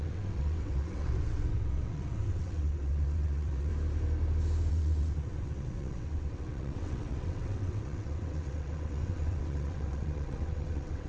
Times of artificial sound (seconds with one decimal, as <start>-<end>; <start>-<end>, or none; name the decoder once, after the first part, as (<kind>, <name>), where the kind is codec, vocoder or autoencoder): 0.0-3.7 (vocoder, WaveNeXt); 4.7-11.1